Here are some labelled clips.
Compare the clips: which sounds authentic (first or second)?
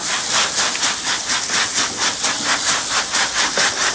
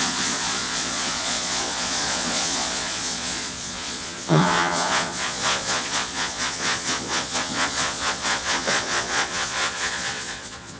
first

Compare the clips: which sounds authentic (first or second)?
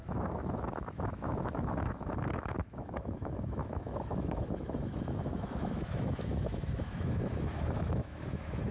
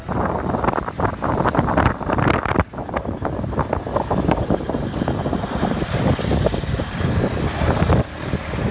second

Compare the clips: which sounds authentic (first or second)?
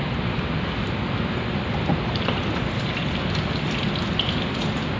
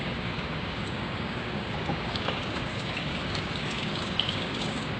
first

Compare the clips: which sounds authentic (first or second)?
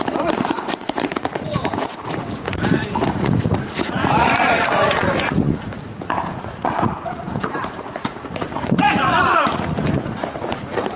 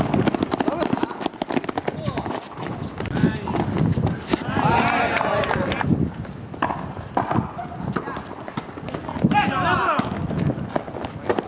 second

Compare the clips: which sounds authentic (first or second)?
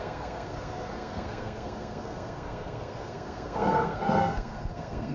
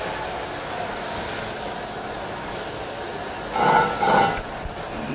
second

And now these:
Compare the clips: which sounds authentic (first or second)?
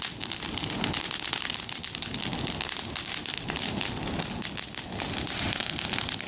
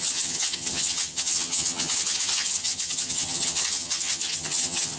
first